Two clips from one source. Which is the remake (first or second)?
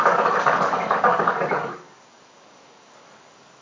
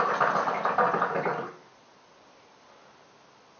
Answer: first